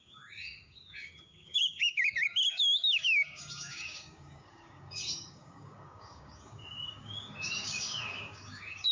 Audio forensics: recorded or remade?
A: remade